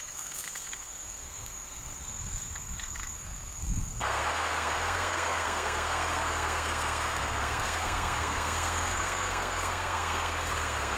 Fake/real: fake